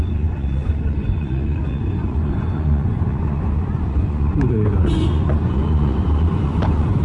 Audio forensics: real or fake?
fake